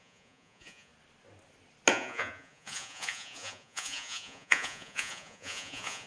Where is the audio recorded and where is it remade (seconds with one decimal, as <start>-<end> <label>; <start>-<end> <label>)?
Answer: 0.0-0.9 remade; 0.9-1.9 recorded; 1.9-6.1 remade